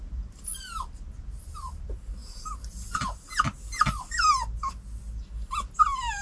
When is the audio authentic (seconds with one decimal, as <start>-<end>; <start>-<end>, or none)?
0.0-6.2